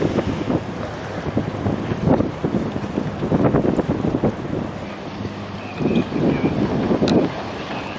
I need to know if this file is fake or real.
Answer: real